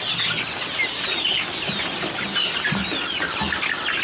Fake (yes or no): no